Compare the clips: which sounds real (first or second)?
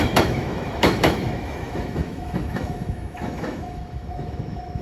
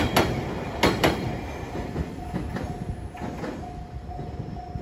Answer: second